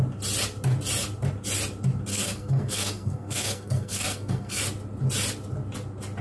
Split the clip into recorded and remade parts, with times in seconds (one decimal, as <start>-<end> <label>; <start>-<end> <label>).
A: 0.0-2.1 recorded; 2.1-4.6 remade; 4.6-6.2 recorded